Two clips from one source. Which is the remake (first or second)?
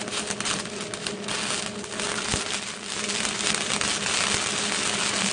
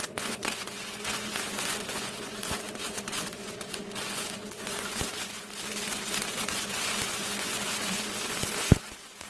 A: second